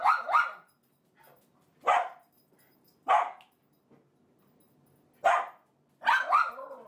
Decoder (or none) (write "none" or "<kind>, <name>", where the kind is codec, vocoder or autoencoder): none